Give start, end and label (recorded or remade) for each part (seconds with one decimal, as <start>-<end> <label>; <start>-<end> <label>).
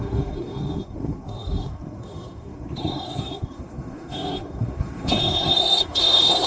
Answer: 0.0-6.5 remade